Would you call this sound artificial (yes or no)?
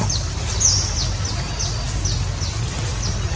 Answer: no